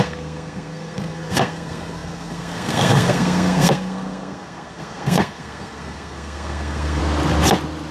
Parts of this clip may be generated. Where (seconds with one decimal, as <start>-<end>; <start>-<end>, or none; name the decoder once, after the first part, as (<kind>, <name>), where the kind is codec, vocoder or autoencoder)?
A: 0.0-7.0 (codec, SNAC)